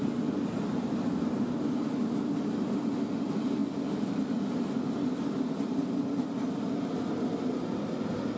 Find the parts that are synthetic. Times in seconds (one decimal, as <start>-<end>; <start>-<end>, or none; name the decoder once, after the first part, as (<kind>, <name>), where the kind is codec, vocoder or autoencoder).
none